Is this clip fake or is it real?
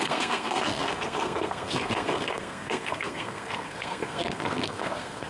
fake